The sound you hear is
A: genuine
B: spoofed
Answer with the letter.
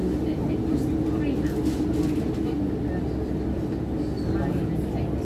A